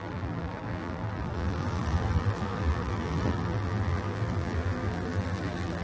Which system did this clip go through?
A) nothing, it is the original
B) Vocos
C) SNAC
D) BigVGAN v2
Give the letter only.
D